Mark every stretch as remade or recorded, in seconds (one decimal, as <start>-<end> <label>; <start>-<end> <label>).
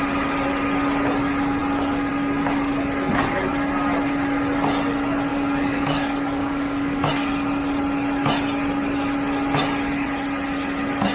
0.0-5.3 recorded; 5.3-7.1 remade; 7.1-11.1 recorded